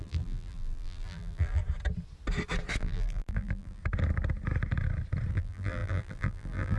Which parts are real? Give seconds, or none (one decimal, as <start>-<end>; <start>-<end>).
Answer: 1.6-2.8; 3.8-5.3